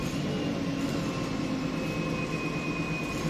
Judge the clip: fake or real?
real